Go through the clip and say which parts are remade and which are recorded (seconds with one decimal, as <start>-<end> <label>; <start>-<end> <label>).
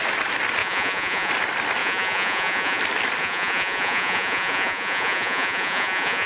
0.0-0.6 recorded; 0.6-1.3 remade; 1.3-1.8 recorded; 1.8-2.8 remade; 2.8-3.2 recorded; 3.2-6.3 remade